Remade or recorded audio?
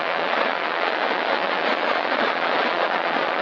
remade